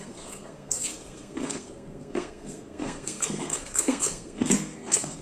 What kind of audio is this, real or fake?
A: fake